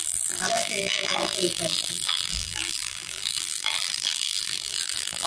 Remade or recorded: remade